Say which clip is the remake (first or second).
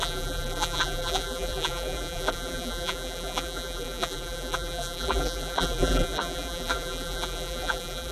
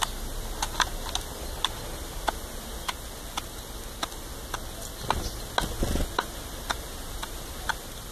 first